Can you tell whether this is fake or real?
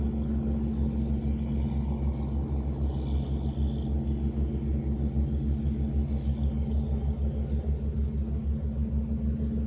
real